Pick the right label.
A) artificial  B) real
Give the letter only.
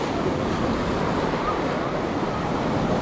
B